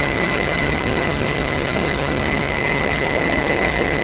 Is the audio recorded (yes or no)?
no